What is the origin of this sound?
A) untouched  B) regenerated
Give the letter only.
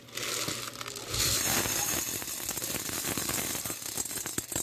A